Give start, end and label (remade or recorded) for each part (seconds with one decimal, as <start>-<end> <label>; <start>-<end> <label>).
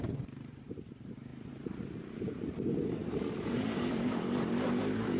0.0-5.2 remade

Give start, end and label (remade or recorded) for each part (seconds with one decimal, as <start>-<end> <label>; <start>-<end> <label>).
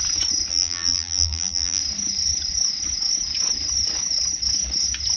0.0-0.5 recorded; 0.5-1.8 remade; 1.8-5.2 recorded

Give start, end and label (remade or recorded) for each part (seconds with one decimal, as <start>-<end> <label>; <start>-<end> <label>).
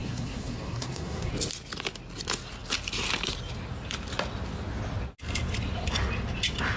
0.0-1.3 remade; 1.3-6.8 recorded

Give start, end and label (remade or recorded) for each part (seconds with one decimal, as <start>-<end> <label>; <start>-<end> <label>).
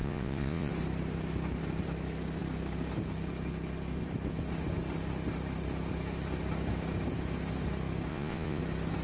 0.0-0.7 remade; 0.7-8.1 recorded; 8.1-8.6 remade; 8.6-9.0 recorded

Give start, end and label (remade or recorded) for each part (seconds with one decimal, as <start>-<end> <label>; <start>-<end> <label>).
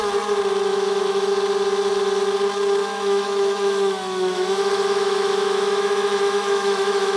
0.0-0.7 recorded; 0.7-1.3 remade; 1.3-2.8 recorded; 2.8-7.2 remade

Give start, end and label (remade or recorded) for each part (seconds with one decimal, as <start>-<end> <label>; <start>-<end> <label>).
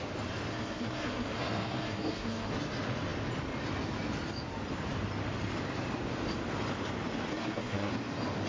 0.0-0.5 recorded; 0.5-2.5 remade; 2.5-7.3 recorded; 7.3-7.9 remade; 7.9-8.5 recorded